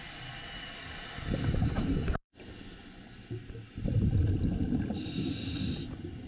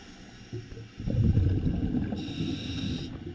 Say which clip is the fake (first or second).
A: first